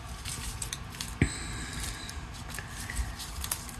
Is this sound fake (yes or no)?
no